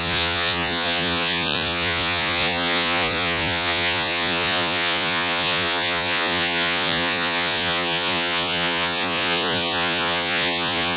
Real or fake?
fake